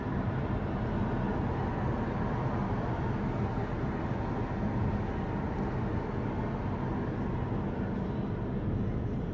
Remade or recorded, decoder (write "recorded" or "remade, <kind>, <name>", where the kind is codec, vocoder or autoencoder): recorded